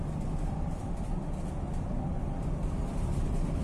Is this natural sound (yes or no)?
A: no